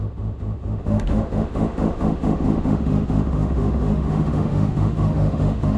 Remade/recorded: remade